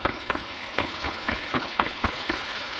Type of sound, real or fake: fake